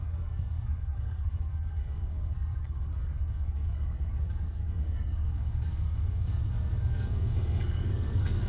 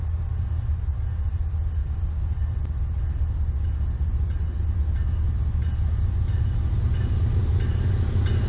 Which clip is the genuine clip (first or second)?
second